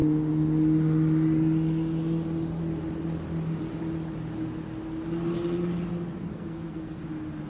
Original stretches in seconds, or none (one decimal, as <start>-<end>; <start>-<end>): 0.0-6.3; 7.0-7.5